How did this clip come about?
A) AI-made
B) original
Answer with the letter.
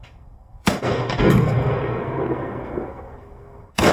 A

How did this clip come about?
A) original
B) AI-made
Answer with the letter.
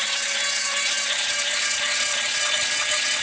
A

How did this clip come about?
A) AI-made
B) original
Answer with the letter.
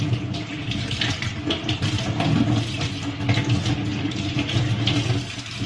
B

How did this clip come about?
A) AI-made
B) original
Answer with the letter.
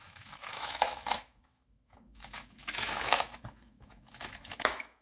A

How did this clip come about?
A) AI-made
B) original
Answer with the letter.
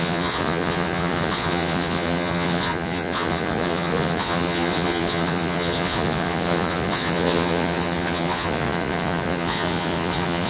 A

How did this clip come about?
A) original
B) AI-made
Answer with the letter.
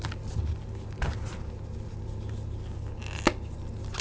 A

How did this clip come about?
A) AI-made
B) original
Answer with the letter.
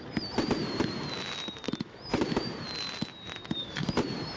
B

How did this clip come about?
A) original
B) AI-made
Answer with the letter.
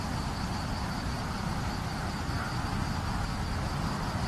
A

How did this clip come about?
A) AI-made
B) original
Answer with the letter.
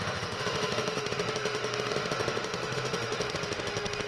A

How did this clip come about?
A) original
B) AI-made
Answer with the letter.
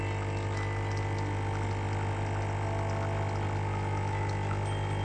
A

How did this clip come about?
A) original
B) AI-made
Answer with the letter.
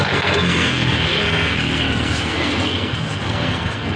B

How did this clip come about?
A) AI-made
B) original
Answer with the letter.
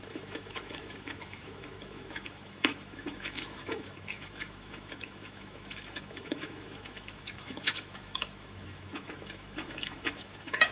A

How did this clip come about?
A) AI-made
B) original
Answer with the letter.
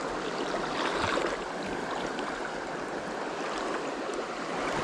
B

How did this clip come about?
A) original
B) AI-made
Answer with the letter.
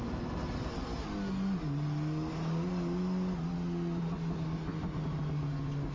A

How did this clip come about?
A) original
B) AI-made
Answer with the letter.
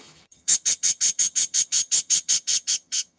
B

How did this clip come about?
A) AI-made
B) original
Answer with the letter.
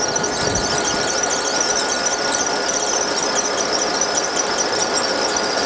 B